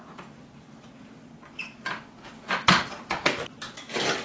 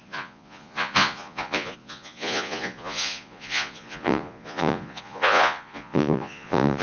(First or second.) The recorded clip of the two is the first